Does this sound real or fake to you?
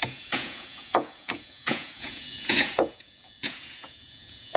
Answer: fake